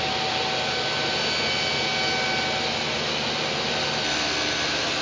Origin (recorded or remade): recorded